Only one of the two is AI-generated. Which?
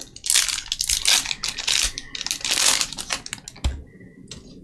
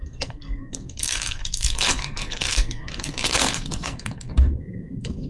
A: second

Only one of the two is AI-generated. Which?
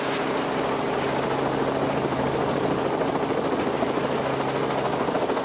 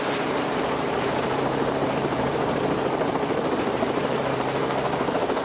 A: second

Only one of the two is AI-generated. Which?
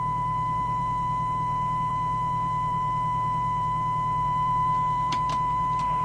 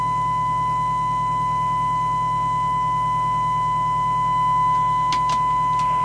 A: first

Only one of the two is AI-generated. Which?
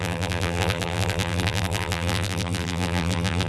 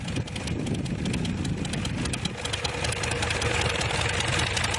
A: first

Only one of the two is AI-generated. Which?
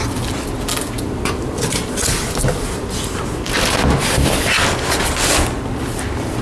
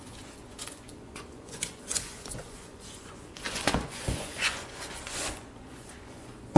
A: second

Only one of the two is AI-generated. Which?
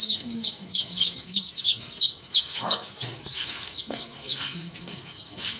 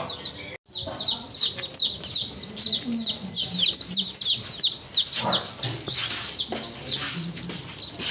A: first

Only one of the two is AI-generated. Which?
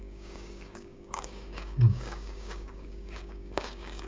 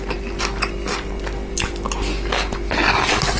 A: first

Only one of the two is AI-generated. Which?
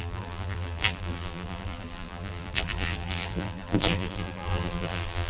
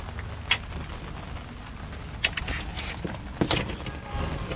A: first